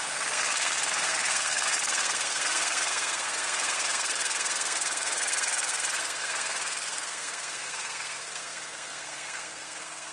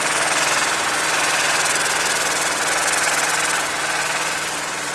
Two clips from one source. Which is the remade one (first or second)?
first